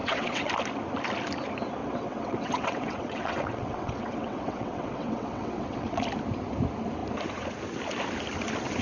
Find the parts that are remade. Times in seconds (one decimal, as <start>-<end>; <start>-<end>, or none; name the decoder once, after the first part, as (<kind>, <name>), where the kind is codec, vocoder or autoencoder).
0.0-0.5 (vocoder, WaveNeXt); 1.8-6.0